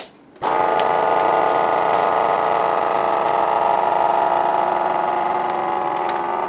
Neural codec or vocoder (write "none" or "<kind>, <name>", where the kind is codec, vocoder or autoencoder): none